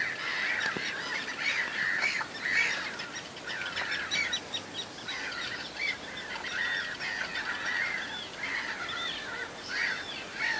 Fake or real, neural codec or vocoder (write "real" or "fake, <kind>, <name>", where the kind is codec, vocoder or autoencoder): real